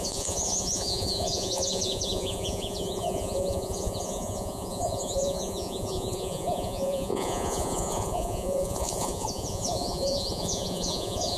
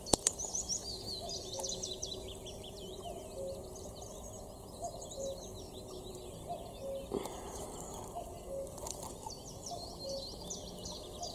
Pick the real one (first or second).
second